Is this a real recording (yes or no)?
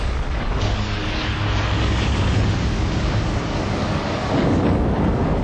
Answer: no